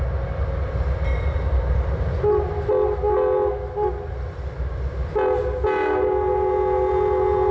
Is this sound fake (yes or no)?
no